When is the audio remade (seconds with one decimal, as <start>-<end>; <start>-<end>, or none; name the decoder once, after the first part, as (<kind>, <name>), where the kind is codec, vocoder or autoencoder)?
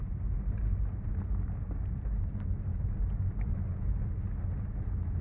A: none